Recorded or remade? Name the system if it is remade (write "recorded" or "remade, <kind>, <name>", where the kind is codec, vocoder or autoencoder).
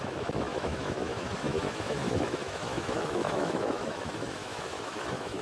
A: remade, autoencoder, DAC-VAE